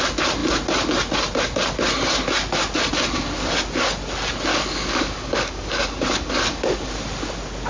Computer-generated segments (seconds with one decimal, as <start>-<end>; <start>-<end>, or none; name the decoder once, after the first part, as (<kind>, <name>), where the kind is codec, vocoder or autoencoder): 4.5-6.9 (codec, DAC)